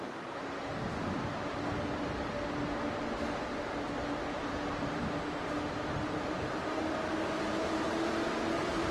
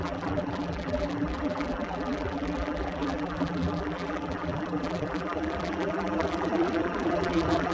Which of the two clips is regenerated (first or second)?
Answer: second